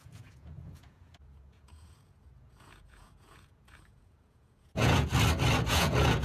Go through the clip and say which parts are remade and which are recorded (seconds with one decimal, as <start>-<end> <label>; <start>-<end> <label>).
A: 0.0-5.1 remade; 5.1-5.7 recorded; 5.7-6.2 remade